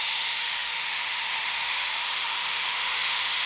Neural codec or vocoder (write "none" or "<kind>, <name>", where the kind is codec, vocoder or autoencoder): autoencoder, DAC-VAE